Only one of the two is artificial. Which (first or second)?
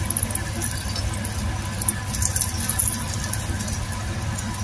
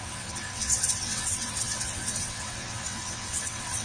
second